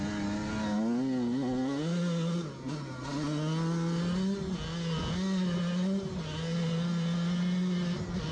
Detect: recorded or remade recorded